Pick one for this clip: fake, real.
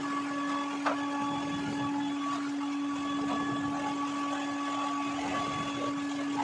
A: real